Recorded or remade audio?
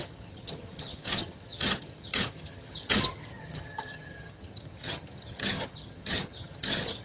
remade